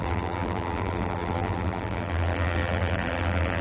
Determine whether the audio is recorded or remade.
remade